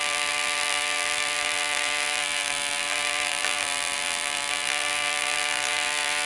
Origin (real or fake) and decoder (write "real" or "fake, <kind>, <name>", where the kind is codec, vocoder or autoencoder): fake, vocoder, BigVGAN v2